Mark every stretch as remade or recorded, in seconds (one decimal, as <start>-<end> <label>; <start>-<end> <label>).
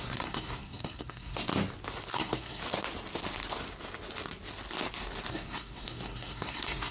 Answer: 0.0-1.5 remade; 1.5-2.1 recorded; 2.1-2.6 remade; 2.6-5.3 recorded; 5.3-6.9 remade